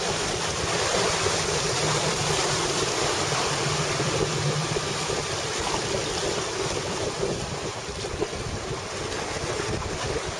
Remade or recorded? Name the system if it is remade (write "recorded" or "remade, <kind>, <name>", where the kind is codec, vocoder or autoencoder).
remade, vocoder, BigVGAN v2